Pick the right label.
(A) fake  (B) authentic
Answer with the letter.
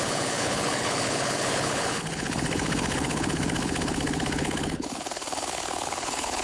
A